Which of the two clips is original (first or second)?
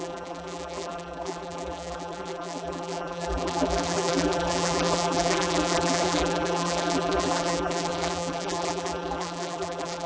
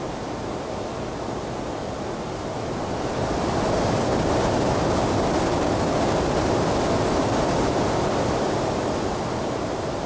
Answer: second